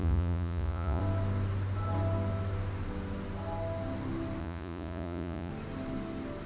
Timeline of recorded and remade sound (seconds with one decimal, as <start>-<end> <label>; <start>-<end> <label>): 0.0-1.0 remade; 1.0-4.4 recorded; 4.4-5.5 remade; 5.5-6.5 recorded